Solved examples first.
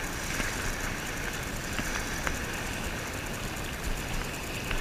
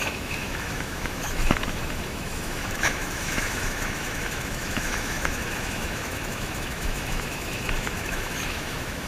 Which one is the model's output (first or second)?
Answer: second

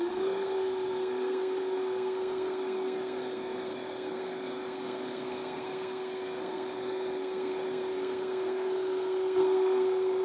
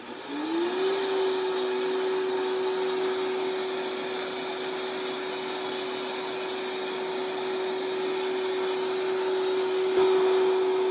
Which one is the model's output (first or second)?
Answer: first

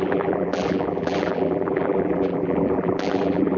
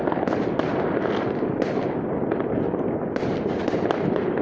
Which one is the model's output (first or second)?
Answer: first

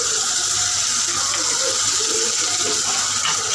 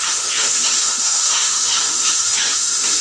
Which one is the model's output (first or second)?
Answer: second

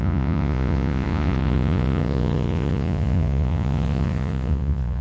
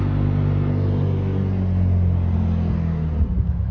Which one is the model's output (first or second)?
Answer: first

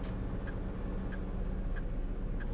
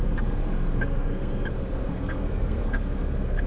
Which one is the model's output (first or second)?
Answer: second